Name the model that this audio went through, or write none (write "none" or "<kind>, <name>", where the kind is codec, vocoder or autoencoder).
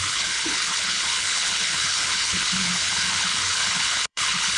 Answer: codec, HILCodec